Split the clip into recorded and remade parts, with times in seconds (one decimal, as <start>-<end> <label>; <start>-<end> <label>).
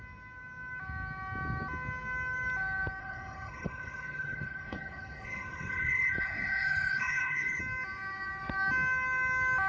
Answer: 0.0-3.0 recorded; 3.0-7.6 remade; 7.6-9.7 recorded